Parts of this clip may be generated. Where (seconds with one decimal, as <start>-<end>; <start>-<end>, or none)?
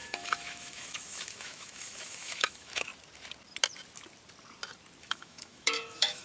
0.0-2.9; 5.0-6.2